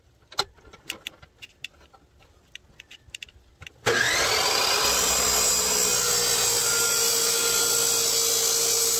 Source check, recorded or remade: recorded